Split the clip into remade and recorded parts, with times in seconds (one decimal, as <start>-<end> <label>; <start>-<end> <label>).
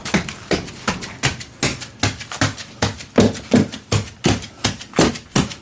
0.0-0.7 remade; 0.7-5.6 recorded